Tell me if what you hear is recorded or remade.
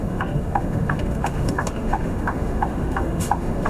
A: remade